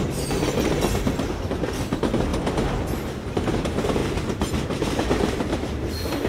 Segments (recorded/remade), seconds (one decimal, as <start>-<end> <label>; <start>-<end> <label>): 0.0-6.3 recorded